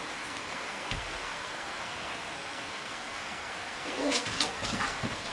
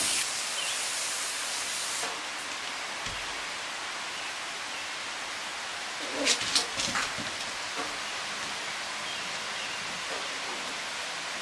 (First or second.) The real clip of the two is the second